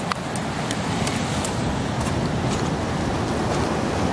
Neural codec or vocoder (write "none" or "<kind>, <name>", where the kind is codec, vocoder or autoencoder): none